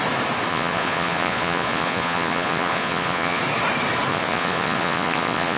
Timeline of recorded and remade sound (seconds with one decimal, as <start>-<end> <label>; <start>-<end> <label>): 0.0-0.5 recorded; 0.5-3.4 remade; 3.4-4.1 recorded; 4.1-5.6 remade

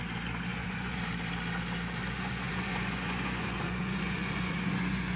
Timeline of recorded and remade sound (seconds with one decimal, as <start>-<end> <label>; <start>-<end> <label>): 0.0-0.5 recorded; 0.5-1.0 remade; 1.0-2.0 recorded; 2.0-5.2 remade

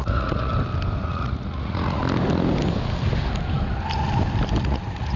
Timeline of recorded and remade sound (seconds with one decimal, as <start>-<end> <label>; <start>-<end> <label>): 0.0-0.5 remade; 0.5-1.0 recorded; 1.0-2.0 remade; 2.0-4.6 recorded; 4.6-5.2 remade

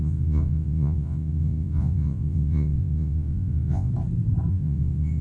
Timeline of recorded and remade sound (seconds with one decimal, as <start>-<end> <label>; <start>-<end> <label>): 0.0-3.9 remade; 3.9-4.5 recorded; 4.5-5.2 remade

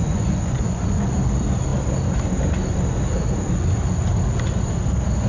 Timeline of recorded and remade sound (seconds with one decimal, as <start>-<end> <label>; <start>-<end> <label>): 0.0-1.0 remade; 1.0-5.3 recorded

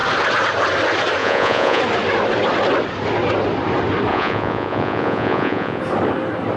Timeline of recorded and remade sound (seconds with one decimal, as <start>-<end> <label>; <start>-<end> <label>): 0.0-1.2 recorded; 1.2-1.8 remade; 1.8-4.1 recorded; 4.1-5.8 remade; 5.8-6.6 recorded